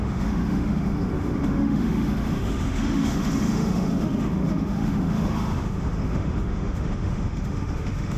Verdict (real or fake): fake